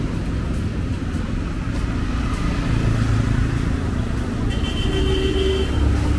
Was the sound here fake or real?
real